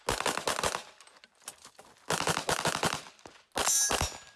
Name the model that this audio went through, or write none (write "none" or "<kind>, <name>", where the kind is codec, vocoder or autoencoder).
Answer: none